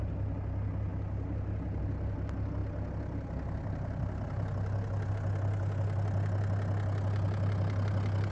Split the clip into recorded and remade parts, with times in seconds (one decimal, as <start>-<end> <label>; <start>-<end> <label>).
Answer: 0.0-8.3 recorded